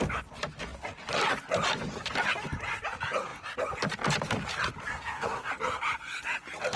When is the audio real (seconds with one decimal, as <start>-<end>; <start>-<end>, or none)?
0.0-4.9; 5.5-6.8